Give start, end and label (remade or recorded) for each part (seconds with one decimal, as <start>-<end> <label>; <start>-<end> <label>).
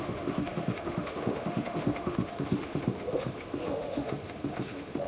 0.0-5.1 remade